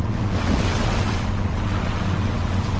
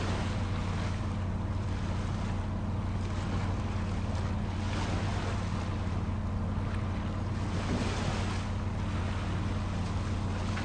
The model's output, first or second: first